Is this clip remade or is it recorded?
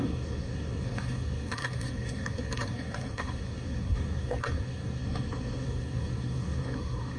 remade